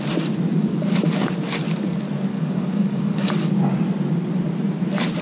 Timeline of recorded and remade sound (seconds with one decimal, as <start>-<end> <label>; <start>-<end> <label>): 0.0-0.7 recorded; 0.7-1.3 remade; 1.3-2.3 recorded; 2.3-3.5 remade; 3.5-5.2 recorded